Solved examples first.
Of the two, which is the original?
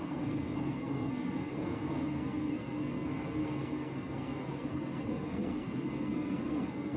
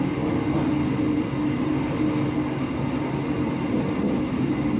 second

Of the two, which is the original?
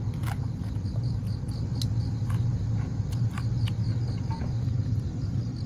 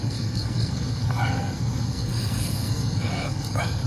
first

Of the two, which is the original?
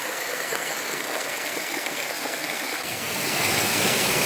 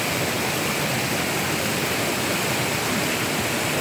second